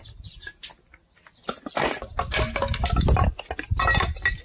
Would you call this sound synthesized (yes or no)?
no